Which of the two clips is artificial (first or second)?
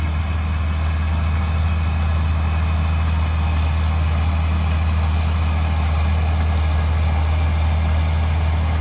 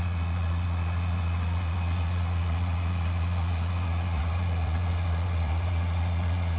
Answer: second